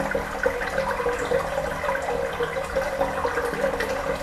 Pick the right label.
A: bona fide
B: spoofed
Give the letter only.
A